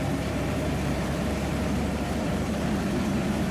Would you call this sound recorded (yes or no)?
no